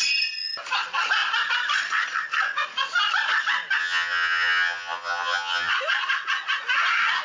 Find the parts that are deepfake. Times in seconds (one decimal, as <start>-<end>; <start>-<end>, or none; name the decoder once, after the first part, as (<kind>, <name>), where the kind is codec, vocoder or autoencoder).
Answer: 3.8-5.7 (vocoder, HiFi-GAN)

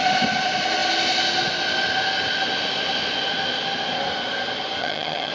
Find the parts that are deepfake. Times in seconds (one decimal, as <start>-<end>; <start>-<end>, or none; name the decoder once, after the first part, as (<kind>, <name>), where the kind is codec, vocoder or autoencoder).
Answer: 4.8-5.3 (vocoder, HiFi-GAN)